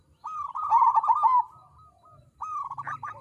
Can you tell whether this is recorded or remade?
recorded